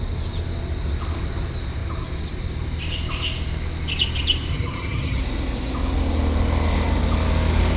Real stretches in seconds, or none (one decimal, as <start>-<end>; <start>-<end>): 0.0-4.5; 5.2-7.8